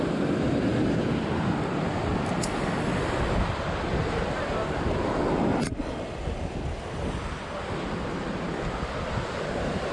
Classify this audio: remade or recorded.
recorded